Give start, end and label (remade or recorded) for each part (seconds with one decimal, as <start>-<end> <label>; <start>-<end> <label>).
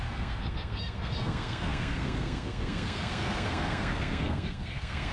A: 0.0-5.1 remade